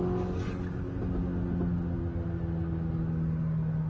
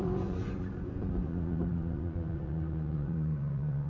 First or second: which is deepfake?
second